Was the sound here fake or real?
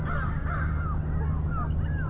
real